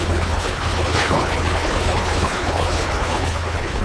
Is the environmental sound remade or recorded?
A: remade